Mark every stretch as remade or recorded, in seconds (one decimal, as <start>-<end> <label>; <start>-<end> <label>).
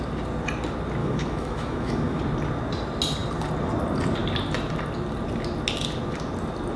0.0-1.0 recorded; 1.0-2.2 remade; 2.2-6.8 recorded